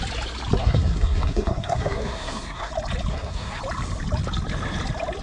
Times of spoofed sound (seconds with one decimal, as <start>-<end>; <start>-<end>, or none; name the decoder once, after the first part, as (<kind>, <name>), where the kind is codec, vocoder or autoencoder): 0.6-2.7 (codec, SNAC); 3.1-3.6